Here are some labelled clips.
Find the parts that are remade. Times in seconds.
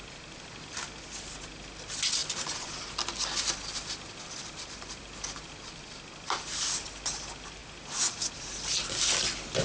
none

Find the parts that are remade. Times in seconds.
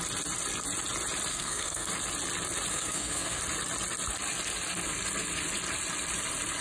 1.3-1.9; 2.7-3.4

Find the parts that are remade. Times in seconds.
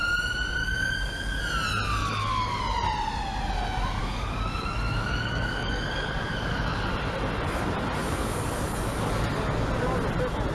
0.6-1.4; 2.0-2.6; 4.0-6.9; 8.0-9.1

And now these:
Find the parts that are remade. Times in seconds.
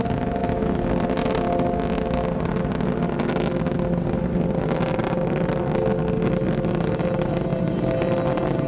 none